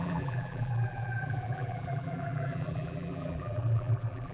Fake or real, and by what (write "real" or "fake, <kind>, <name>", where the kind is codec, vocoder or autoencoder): fake, vocoder, BigVGAN v2